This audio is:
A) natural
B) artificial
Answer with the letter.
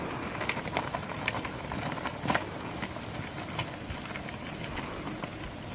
A